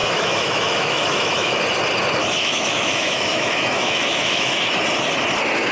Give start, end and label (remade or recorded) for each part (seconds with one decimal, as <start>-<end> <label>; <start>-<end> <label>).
0.0-1.6 remade; 1.6-2.2 recorded; 2.2-4.7 remade; 4.7-5.7 recorded